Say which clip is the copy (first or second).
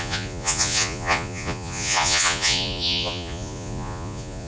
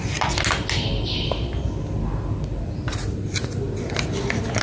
first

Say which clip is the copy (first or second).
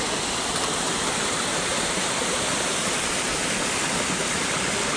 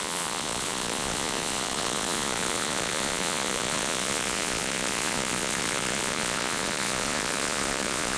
second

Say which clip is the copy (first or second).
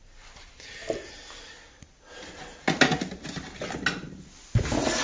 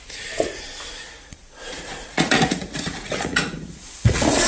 second